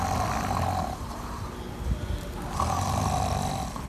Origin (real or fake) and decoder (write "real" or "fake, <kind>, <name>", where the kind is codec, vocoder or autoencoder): real